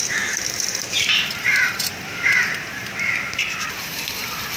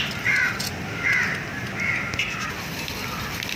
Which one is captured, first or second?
second